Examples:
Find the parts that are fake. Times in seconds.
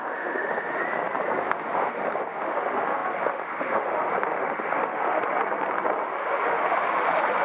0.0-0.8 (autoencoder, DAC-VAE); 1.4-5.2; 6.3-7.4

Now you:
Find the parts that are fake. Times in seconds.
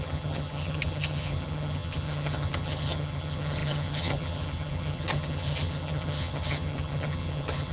0.0-7.7 (vocoder, HiFi-GAN)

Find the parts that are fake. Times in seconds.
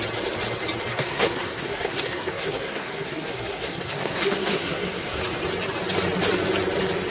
0.9-5.2 (codec, SNAC)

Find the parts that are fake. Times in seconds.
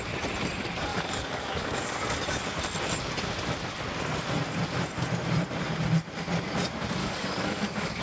0.9-2.2 (codec, DAC); 7.0-8.0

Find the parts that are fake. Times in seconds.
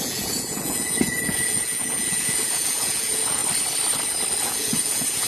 0.0-3.4 (vocoder, Vocos); 4.4-5.3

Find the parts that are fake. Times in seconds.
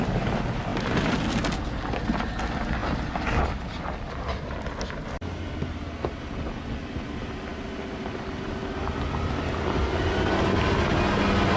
none